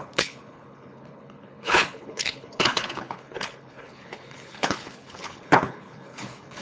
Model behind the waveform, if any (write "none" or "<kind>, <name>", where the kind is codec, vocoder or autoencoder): codec, HILCodec